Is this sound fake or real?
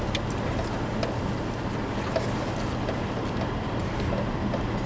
real